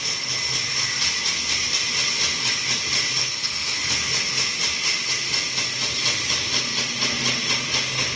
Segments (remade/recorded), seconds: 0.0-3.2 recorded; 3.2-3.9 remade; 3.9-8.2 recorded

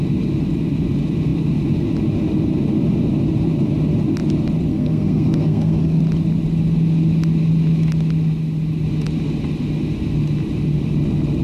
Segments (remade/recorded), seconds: 0.0-4.7 recorded; 4.7-6.0 remade; 6.0-11.4 recorded

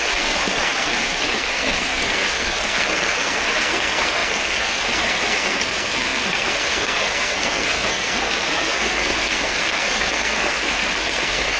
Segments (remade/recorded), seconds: 0.0-11.6 remade

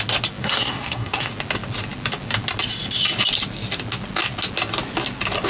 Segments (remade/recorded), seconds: 0.0-0.4 recorded; 0.4-1.3 remade; 1.3-5.5 recorded

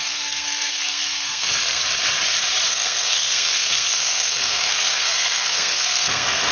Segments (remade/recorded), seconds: 0.0-1.8 remade; 1.8-2.7 recorded; 2.7-6.5 remade

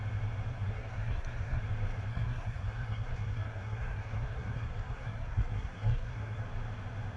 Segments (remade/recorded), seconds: 0.0-0.5 recorded; 0.5-1.6 remade; 1.6-2.1 recorded; 2.1-6.4 remade; 6.4-7.2 recorded

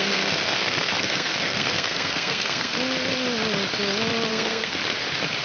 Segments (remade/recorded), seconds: 0.0-2.7 remade; 2.7-4.3 recorded; 4.3-4.8 remade; 4.8-5.4 recorded

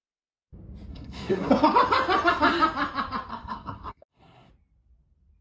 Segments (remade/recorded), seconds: 0.0-0.9 recorded; 0.9-1.5 remade; 1.5-3.3 recorded; 3.3-4.5 remade; 4.5-5.4 recorded